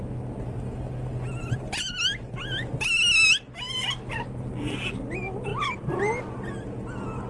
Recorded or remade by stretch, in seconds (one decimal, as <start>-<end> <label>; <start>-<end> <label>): 0.0-7.3 recorded